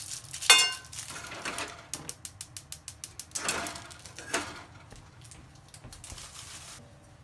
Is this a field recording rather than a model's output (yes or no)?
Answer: yes